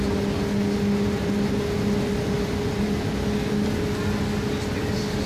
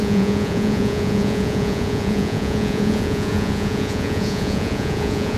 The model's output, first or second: second